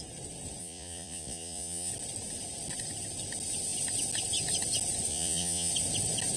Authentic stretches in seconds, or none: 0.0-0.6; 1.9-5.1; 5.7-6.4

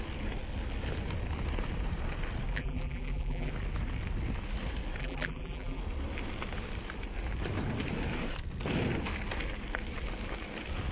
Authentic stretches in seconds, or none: 0.0-2.5; 3.5-5.0; 5.8-10.9